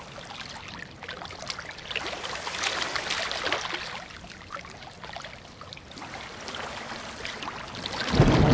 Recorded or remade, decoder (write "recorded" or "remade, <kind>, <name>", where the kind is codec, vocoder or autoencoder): recorded